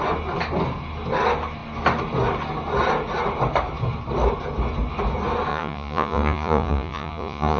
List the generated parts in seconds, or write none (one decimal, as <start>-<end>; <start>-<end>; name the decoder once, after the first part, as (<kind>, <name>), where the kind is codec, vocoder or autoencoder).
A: 5.5-7.6 (vocoder, Vocos)

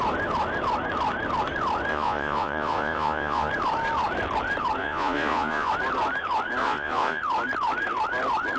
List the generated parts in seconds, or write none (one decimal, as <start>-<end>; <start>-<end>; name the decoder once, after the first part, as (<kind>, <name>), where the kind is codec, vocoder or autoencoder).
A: 1.9-3.5 (vocoder, Vocos); 4.8-5.7; 6.6-7.2